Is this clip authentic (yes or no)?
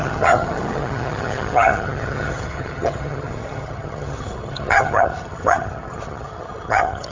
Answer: no